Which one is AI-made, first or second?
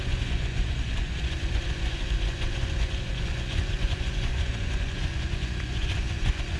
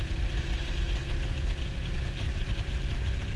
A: first